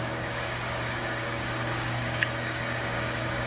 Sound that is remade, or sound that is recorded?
remade